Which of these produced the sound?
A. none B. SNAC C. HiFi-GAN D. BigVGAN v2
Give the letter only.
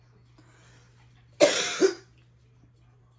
A